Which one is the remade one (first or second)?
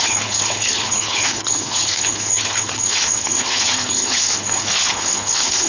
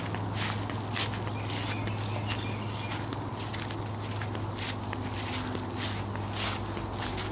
first